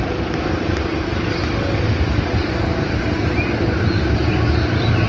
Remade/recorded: recorded